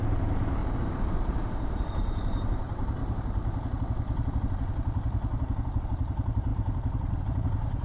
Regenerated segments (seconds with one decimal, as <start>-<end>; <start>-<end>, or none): 0.0-0.6; 1.5-3.0; 5.8-7.8